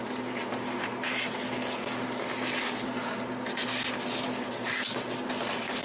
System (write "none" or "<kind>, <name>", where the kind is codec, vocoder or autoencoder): none